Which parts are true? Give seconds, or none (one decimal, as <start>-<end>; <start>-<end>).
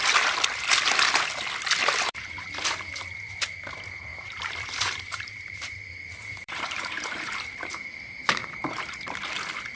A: 0.0-4.1; 9.2-9.8